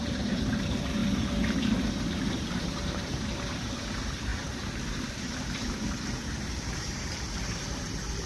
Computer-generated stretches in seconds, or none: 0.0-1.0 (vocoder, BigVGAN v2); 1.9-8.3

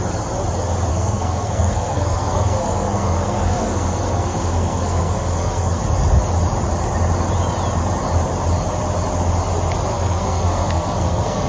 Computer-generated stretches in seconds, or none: 0.9-5.8 (codec, SNAC); 9.9-11.5

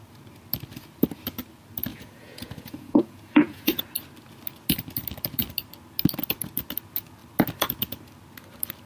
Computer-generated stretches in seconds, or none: 1.9-3.8 (vocoder, Vocos)

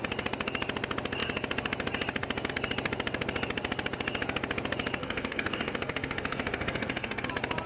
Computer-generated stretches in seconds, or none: 5.0-7.3 (codec, SNAC)

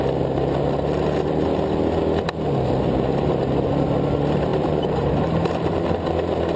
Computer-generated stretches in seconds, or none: 4.5-5.1 (vocoder, BigVGAN v2)

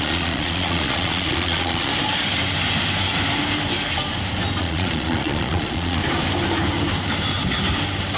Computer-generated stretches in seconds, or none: 0.0-1.9 (vocoder, Vocos); 4.6-6.0

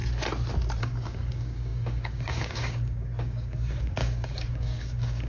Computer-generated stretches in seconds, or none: 0.8-5.3 (codec, DAC)

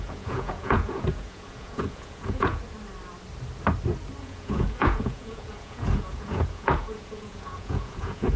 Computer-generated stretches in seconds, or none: 0.0-2.6 (vocoder, Vocos); 4.2-8.4